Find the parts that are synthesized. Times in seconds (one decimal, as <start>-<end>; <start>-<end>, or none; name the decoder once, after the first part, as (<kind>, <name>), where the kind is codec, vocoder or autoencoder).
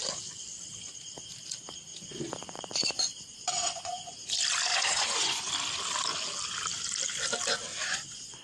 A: 1.9-4.3 (vocoder, Vocos); 4.7-5.5; 7.7-8.4